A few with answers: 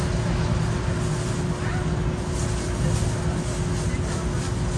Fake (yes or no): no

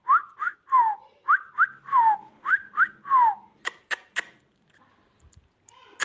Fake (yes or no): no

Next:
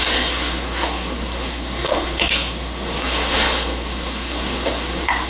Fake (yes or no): yes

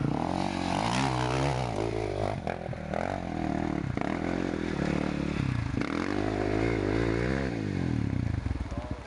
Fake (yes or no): no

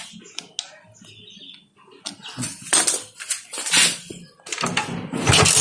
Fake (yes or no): no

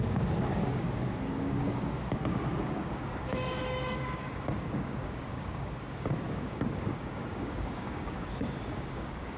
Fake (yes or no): yes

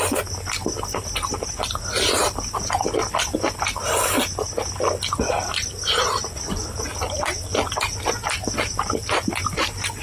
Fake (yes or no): no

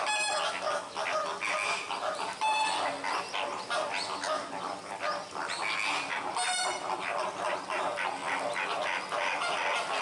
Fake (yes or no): no